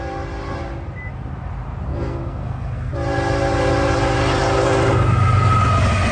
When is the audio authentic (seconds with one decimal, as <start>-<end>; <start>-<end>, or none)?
0.0-1.9; 2.9-6.1